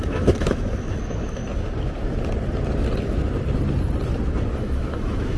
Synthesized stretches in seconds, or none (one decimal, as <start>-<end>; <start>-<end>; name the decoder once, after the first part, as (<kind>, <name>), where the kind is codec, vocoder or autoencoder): 0.0-1.4 (autoencoder, DAC-VAE); 4.6-5.4